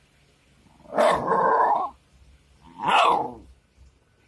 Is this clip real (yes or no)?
yes